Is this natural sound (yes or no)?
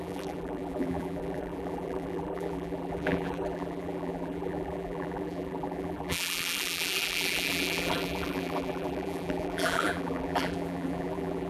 no